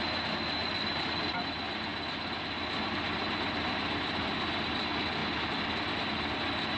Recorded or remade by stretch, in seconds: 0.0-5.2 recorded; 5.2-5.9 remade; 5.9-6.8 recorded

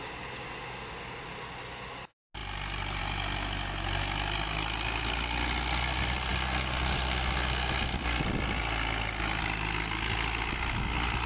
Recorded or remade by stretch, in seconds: 0.0-11.3 recorded

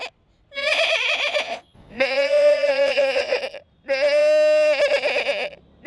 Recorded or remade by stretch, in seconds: 0.0-0.6 recorded; 0.6-3.4 remade; 3.4-5.9 recorded

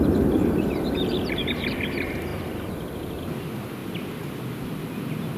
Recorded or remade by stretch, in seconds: 0.0-0.4 recorded; 0.4-1.6 remade; 1.6-5.4 recorded

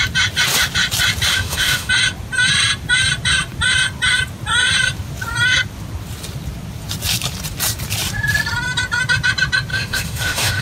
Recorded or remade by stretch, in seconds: 0.0-1.3 recorded; 1.3-1.9 remade; 1.9-9.7 recorded; 9.7-10.6 remade

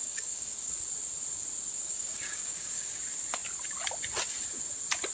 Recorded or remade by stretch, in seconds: 0.0-0.8 remade; 0.8-1.7 recorded; 1.7-3.0 remade; 3.0-5.1 recorded

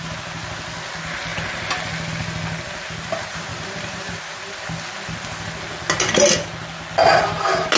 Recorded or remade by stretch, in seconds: 0.0-3.5 recorded; 3.5-4.2 remade; 4.2-7.8 recorded